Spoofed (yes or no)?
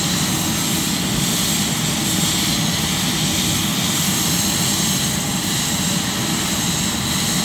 no